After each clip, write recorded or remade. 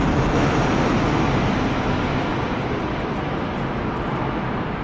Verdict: recorded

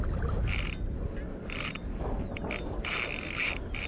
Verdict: recorded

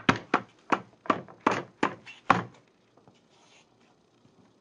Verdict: recorded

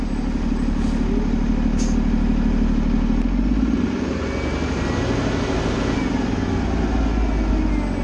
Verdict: recorded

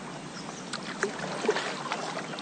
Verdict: recorded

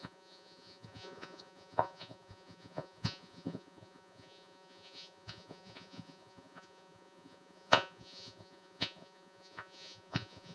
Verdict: remade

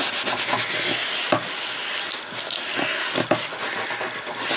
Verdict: recorded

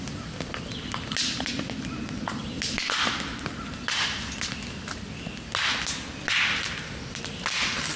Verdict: recorded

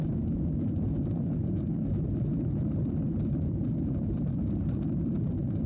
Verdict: recorded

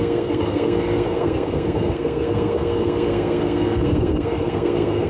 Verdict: remade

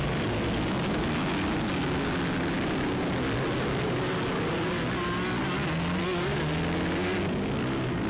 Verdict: recorded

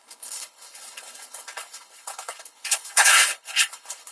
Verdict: remade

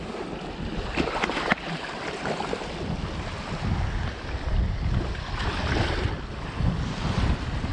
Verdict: recorded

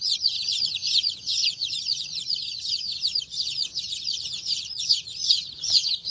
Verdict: remade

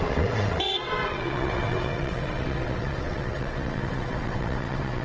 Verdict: remade